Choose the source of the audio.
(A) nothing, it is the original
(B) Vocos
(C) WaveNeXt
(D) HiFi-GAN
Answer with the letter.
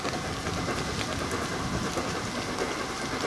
A